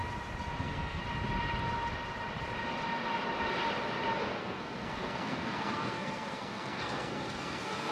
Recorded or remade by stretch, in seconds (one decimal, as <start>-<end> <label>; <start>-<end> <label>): 0.0-0.6 recorded; 0.6-1.0 remade; 1.0-4.4 recorded; 4.4-7.9 remade